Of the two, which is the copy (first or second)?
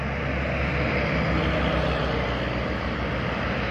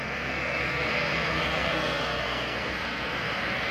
second